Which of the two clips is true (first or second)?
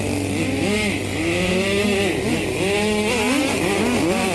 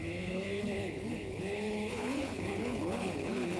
first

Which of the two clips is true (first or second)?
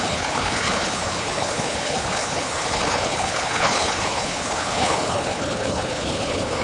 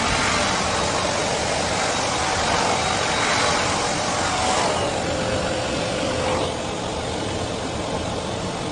second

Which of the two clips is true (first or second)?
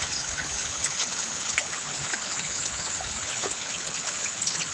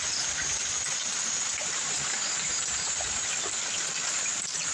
second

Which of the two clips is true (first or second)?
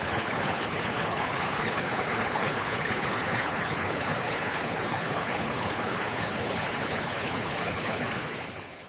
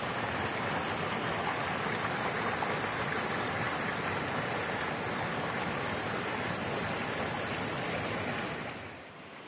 second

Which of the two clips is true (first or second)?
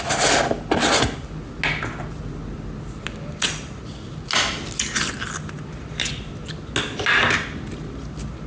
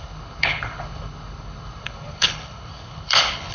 first